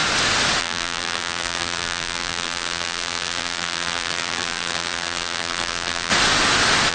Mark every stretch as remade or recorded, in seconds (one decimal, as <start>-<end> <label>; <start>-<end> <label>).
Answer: 0.0-0.6 recorded; 0.6-6.1 remade; 6.1-6.9 recorded